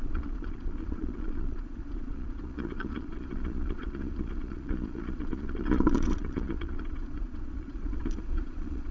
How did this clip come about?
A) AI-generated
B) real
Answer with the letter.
A